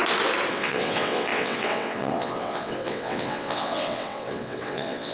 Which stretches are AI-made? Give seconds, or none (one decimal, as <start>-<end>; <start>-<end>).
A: 0.5-5.1